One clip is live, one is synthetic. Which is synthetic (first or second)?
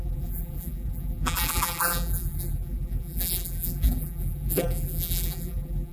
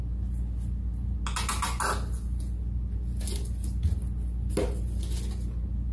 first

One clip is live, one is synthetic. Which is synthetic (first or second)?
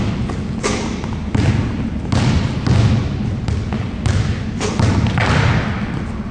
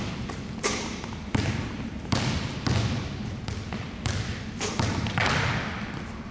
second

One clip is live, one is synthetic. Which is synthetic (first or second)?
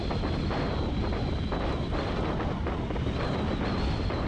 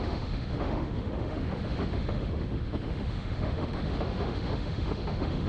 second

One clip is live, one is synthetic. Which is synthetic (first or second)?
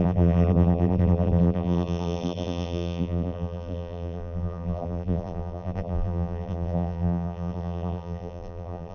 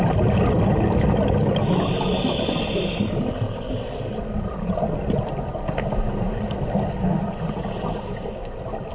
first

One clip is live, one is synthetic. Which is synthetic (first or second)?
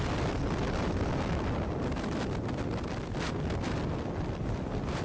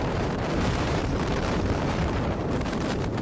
second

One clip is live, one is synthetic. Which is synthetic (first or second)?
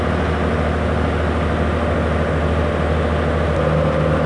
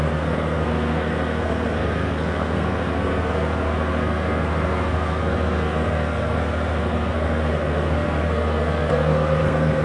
second